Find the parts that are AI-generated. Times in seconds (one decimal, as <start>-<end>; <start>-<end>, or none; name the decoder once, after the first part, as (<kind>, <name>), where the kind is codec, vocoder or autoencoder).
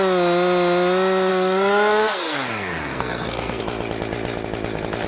1.3-3.6 (codec, SNAC)